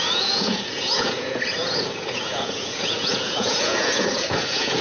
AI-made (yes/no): yes